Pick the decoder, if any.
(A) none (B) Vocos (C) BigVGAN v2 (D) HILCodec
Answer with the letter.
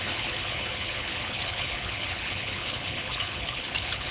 D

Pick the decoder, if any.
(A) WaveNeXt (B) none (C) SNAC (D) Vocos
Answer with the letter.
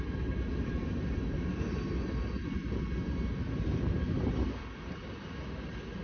B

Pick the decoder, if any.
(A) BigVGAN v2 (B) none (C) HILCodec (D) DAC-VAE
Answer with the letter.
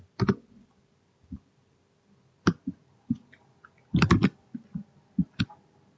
B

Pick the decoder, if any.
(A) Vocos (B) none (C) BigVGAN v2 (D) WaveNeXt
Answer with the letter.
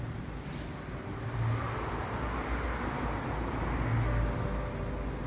B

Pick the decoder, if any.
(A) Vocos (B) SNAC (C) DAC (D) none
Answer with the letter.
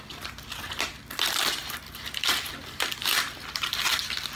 D